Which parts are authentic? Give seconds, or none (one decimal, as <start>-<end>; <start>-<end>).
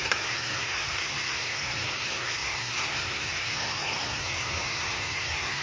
none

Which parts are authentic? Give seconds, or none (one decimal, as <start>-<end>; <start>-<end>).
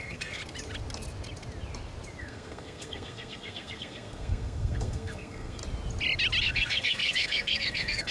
0.4-2.2; 5.6-6.4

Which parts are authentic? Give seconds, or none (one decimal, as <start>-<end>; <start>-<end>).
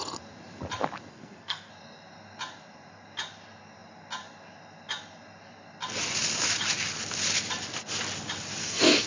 0.0-1.1; 1.7-8.6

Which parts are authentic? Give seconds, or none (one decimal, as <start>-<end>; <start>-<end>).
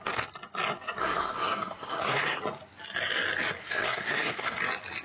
0.0-1.0; 2.4-3.6; 4.6-5.0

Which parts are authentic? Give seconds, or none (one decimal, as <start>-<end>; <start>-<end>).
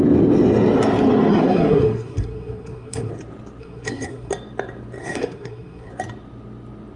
0.0-1.3; 3.1-3.6; 4.3-5.0; 5.9-7.0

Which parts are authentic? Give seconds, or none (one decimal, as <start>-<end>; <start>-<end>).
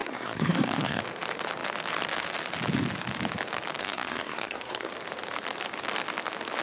1.0-3.8; 4.9-6.6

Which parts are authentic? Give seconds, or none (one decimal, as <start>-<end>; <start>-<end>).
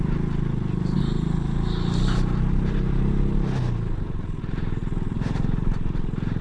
0.0-6.4